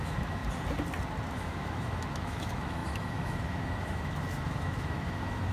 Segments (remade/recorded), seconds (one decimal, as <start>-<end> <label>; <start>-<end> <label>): 0.0-0.4 remade; 0.4-1.3 recorded; 1.3-5.5 remade